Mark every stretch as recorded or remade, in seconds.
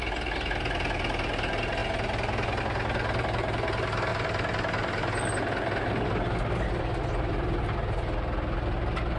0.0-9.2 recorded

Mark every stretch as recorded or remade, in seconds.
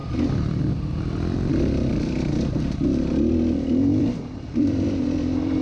0.0-3.3 recorded; 3.3-5.6 remade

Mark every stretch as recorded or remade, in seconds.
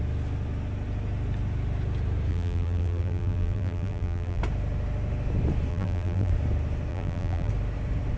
0.0-2.3 recorded; 2.3-4.4 remade; 4.4-5.7 recorded; 5.7-6.3 remade; 6.3-6.9 recorded; 6.9-7.5 remade; 7.5-8.2 recorded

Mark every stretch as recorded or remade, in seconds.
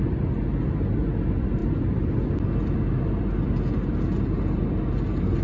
0.0-5.4 recorded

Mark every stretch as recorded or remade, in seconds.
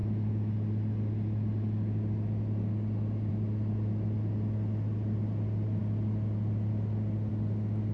0.0-7.9 recorded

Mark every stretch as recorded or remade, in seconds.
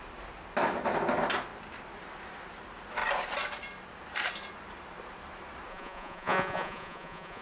0.0-5.7 recorded; 5.7-7.4 remade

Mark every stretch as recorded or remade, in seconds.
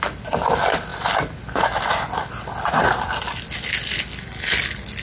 0.0-5.0 recorded